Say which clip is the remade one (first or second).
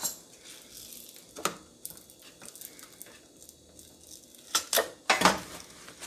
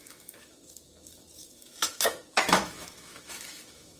second